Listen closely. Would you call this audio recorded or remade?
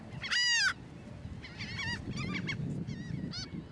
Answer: recorded